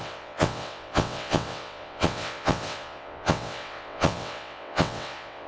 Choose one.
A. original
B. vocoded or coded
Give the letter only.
B